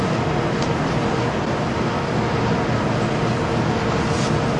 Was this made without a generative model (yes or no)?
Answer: yes